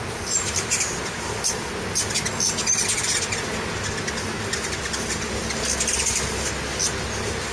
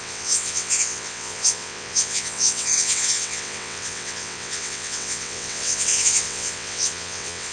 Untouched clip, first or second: first